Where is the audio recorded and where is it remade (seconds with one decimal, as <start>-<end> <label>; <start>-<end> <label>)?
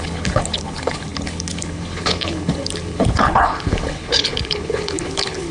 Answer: 0.0-5.5 remade